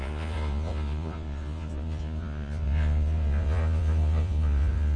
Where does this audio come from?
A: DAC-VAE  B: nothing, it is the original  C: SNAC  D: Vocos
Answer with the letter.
D